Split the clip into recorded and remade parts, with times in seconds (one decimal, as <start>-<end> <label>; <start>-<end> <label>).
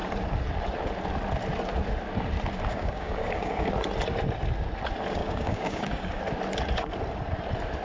0.0-2.7 recorded; 2.7-3.7 remade; 3.7-5.2 recorded; 5.2-6.2 remade; 6.2-7.8 recorded